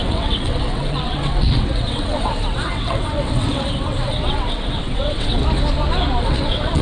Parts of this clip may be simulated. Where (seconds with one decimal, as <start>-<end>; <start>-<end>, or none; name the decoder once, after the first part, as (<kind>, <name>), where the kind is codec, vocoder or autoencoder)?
0.0-5.4 (vocoder, WaveNeXt); 6.2-6.8